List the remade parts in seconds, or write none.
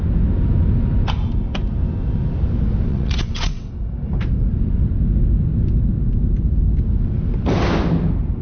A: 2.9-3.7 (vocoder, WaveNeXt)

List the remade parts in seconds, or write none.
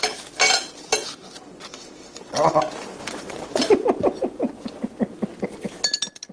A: 1.7-2.6 (vocoder, WaveNeXt); 3.0-3.6